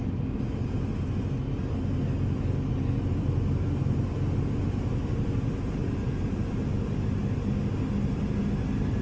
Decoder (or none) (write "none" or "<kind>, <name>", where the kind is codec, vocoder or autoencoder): none